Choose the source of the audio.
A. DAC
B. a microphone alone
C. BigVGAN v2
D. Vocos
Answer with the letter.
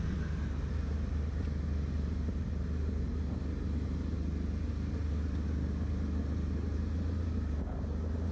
B